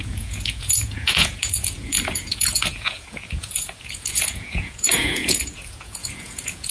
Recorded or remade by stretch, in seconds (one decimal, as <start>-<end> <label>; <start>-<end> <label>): 0.0-6.7 remade